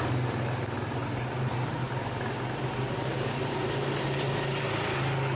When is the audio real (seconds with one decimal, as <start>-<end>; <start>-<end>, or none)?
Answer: 0.0-5.4